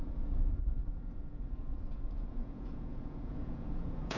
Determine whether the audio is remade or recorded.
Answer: remade